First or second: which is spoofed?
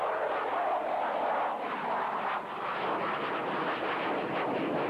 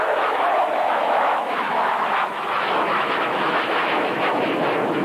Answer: second